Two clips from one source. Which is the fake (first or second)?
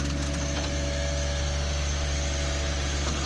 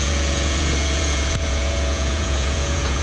second